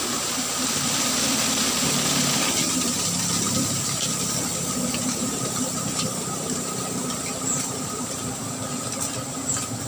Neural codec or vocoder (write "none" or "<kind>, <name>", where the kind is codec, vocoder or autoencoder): none